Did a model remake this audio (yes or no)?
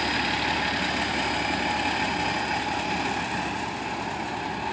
no